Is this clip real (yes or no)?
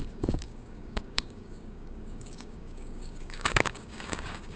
no